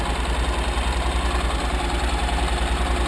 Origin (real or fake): real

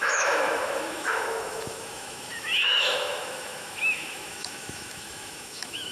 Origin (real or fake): fake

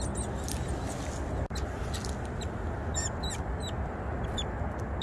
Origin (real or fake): real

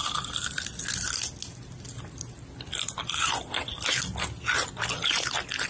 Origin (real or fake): real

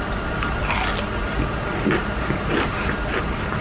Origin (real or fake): real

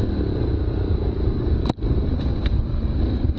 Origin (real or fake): real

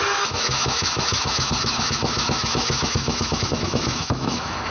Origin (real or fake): fake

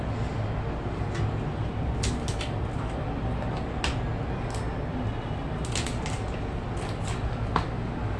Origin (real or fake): real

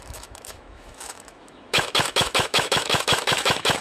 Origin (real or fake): fake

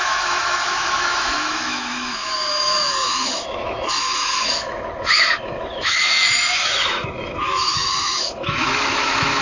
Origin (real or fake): fake